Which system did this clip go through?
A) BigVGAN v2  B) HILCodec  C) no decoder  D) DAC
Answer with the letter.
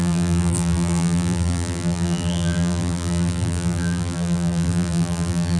A